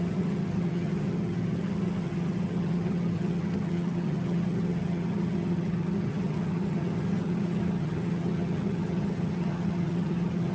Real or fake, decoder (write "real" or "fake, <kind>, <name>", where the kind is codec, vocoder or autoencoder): fake, vocoder, HiFi-GAN